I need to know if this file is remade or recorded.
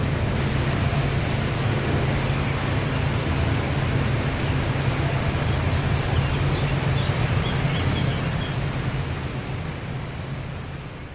recorded